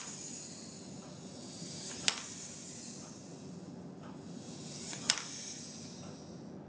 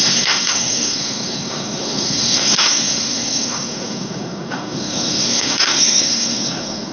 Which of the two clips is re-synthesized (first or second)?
second